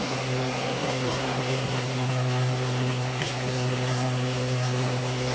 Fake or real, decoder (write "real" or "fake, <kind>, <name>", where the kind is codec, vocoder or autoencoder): fake, codec, SNAC